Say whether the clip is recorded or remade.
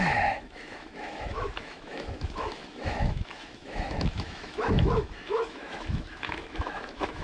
remade